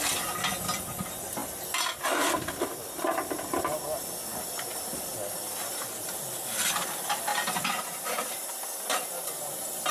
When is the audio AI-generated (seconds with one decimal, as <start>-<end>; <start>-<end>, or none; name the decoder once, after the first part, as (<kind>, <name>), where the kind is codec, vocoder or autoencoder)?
7.3-8.5 (vocoder, BigVGAN v2)